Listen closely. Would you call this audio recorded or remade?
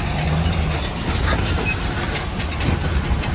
recorded